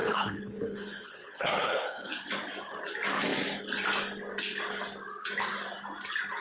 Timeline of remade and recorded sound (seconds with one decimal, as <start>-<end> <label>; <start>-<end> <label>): 0.0-2.1 remade; 2.1-6.4 recorded